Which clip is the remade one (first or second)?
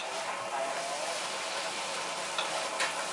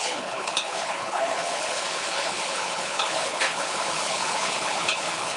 second